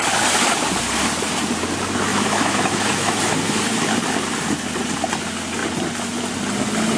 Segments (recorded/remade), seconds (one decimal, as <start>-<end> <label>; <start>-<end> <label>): 0.0-2.1 recorded; 2.1-3.2 remade; 3.2-7.0 recorded